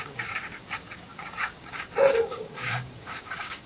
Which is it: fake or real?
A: fake